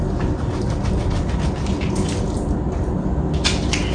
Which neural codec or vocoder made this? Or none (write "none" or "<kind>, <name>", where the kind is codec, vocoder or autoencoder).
none